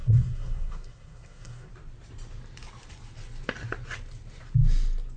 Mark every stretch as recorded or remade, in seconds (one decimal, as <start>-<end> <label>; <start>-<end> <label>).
0.0-1.7 remade; 1.7-5.2 recorded